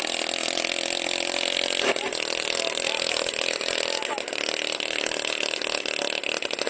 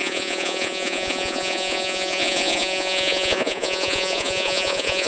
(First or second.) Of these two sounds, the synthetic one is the second